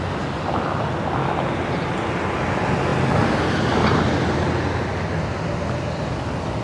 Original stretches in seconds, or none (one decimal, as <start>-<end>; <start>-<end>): 0.0-6.6